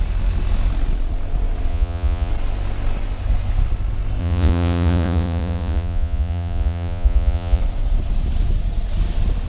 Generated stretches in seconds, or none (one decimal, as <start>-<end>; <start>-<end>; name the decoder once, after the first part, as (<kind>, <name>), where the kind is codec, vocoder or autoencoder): 1.7-2.3 (vocoder, Vocos); 4.2-7.6